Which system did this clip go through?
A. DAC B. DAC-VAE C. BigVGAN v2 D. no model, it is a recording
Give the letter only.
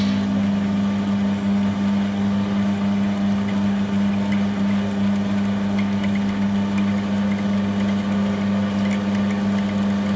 D